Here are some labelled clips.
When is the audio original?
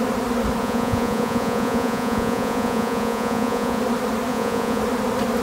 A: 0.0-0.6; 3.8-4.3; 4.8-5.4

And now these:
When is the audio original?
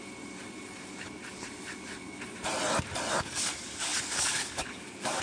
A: 0.0-3.1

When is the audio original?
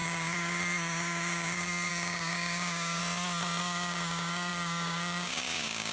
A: 3.0-3.6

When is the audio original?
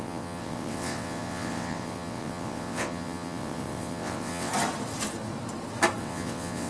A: 4.5-6.0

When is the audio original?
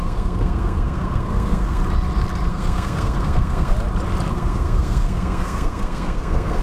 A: 1.8-2.5; 3.7-4.3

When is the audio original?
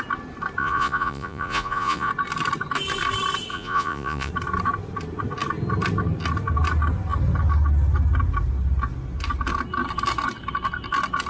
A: 0.0-0.6; 2.1-3.5; 4.3-11.3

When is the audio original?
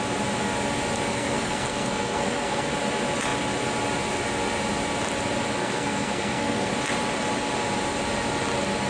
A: 0.0-1.1; 2.7-5.6; 6.7-8.9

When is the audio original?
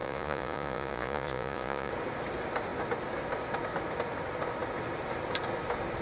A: 1.9-6.0